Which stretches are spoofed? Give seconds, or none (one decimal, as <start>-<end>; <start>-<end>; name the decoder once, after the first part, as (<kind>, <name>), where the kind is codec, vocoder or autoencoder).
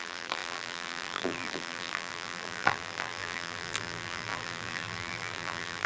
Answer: 0.0-5.9 (vocoder, BigVGAN v2)